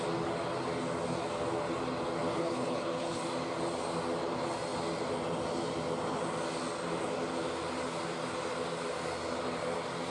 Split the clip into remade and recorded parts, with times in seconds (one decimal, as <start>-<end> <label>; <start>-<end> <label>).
0.0-2.3 recorded; 2.3-3.2 remade; 3.2-10.1 recorded